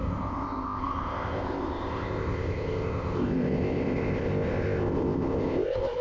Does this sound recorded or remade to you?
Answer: remade